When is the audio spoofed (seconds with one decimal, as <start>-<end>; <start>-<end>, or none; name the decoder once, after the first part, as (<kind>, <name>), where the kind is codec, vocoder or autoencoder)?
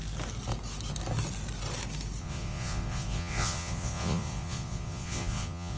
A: 2.2-5.8 (vocoder, Vocos)